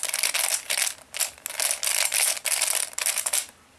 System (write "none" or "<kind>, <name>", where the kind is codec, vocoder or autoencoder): none